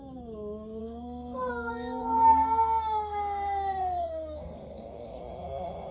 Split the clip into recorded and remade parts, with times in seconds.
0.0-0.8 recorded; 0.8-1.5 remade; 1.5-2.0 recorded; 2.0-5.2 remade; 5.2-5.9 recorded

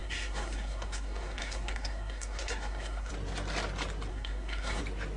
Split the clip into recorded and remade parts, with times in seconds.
0.0-3.1 remade; 3.1-4.1 recorded; 4.1-4.8 remade; 4.8-5.2 recorded

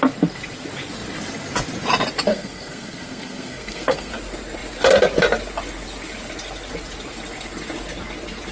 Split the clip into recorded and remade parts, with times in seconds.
0.0-2.3 recorded; 2.3-4.1 remade; 4.1-8.5 recorded

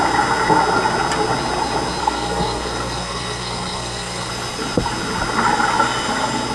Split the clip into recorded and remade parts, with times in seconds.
0.0-2.0 recorded; 2.0-4.3 remade; 4.3-6.5 recorded

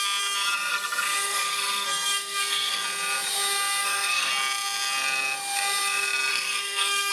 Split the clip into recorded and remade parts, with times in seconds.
0.0-0.7 recorded; 0.7-2.8 remade; 2.8-3.8 recorded; 3.8-4.3 remade; 4.3-6.3 recorded; 6.3-7.1 remade

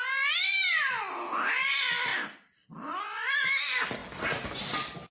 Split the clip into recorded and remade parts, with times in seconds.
0.0-5.1 recorded

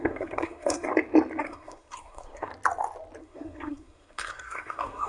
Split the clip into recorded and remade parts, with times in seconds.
0.0-0.9 remade; 0.9-1.4 recorded; 1.4-2.5 remade; 2.5-3.2 recorded; 3.2-5.1 remade

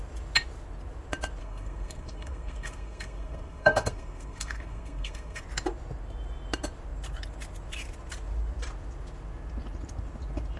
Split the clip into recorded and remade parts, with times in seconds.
0.0-1.4 recorded; 1.4-5.4 remade; 5.4-10.6 recorded